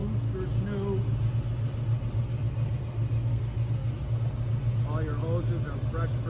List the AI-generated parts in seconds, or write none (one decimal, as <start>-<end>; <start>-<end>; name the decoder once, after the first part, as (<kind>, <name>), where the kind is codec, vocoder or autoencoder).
3.3-3.9 (codec, SNAC)